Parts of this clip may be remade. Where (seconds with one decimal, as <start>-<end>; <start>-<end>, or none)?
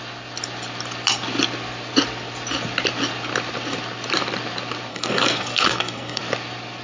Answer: 4.9-6.2